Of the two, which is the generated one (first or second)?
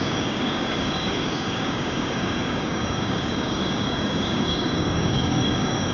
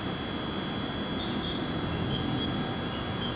first